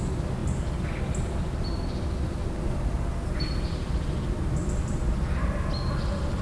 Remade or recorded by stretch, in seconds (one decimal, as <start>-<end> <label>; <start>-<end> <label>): 0.0-6.4 recorded